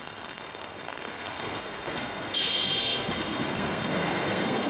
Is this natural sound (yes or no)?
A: no